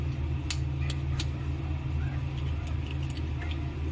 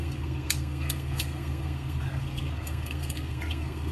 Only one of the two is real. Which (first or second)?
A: first